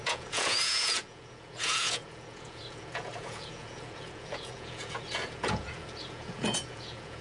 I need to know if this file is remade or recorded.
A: remade